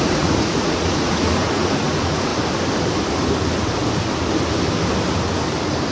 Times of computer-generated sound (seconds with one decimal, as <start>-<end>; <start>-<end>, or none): 0.0-2.3